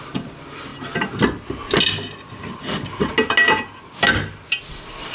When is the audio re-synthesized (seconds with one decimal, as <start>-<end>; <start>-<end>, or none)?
none